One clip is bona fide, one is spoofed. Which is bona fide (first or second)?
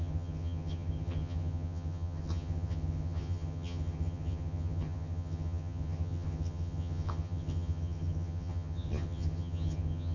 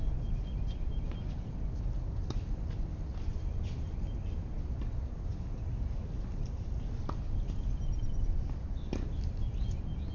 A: second